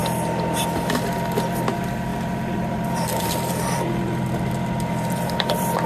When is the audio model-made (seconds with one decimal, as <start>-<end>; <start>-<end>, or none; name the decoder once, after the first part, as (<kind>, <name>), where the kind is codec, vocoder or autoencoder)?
2.1-5.9 (vocoder, BigVGAN v2)

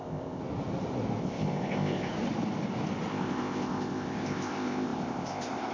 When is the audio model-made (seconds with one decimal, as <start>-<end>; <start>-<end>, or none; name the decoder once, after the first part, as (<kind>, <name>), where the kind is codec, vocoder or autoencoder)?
0.0-0.4 (codec, ZipCodec); 1.2-2.1; 3.1-5.7